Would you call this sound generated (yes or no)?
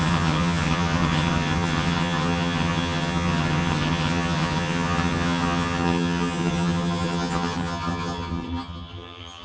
yes